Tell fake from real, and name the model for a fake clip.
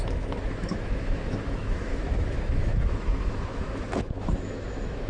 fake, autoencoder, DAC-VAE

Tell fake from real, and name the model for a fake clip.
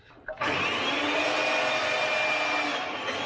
real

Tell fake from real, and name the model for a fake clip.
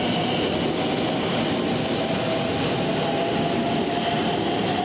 real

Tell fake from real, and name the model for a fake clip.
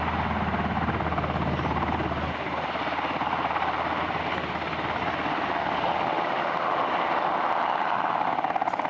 real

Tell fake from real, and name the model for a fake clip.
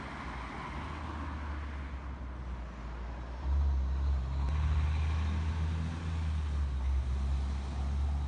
real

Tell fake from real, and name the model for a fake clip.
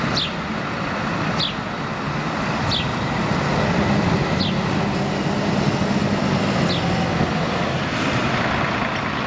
real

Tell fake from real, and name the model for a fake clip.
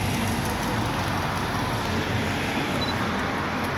real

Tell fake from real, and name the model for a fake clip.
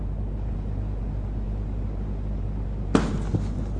real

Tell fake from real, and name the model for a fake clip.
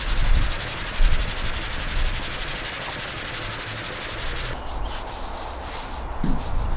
real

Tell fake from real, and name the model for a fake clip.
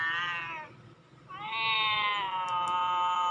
real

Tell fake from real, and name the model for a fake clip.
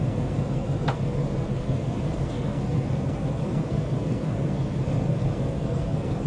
fake, codec, SNAC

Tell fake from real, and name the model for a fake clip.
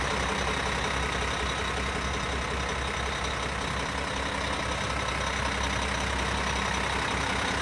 real